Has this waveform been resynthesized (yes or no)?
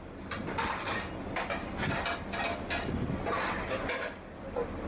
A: no